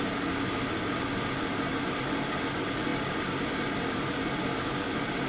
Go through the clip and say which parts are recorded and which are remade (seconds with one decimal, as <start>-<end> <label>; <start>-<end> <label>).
0.0-5.3 recorded